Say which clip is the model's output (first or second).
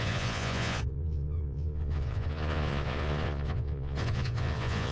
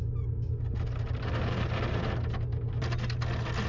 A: first